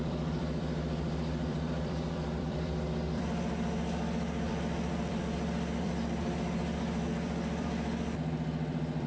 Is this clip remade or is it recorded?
remade